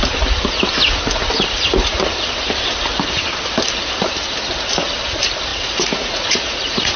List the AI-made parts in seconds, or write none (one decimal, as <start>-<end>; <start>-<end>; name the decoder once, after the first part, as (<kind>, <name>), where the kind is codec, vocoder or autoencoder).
5.5-7.0 (vocoder, Vocos)